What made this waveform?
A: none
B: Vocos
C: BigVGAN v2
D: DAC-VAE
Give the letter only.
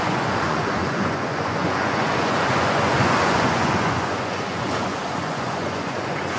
B